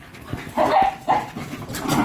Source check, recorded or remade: remade